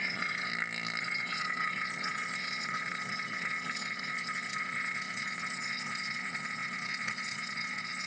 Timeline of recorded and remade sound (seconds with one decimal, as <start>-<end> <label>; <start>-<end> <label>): 0.0-0.5 remade; 0.5-1.0 recorded; 1.0-8.1 remade